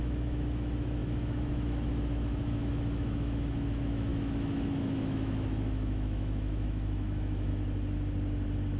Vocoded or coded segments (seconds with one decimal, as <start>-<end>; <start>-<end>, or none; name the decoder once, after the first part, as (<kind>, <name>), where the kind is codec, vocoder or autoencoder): 0.0-7.5 (autoencoder, DAC-VAE)

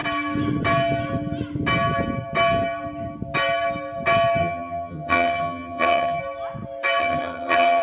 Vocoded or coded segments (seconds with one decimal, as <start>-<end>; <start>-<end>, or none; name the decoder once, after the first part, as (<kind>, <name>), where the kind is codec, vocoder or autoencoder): 4.4-6.2 (vocoder, HiFi-GAN); 7.0-7.8